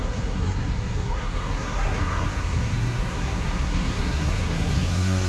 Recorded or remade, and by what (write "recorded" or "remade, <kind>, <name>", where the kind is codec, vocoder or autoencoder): remade, codec, SNAC